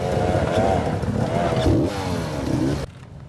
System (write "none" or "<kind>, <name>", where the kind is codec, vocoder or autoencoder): none